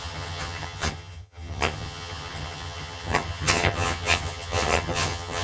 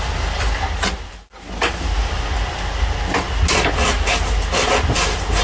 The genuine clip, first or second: second